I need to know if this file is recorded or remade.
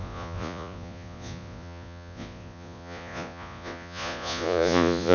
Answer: remade